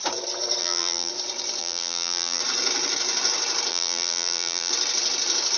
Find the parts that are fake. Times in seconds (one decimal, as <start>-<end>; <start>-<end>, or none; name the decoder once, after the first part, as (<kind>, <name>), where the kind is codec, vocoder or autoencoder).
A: 0.6-1.1 (vocoder, BigVGAN v2); 1.6-2.4; 3.7-4.7